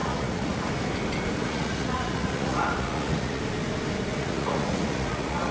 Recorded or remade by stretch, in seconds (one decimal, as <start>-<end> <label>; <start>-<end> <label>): 0.0-0.7 remade; 0.7-1.4 recorded; 1.4-3.4 remade; 3.4-4.1 recorded; 4.1-5.5 remade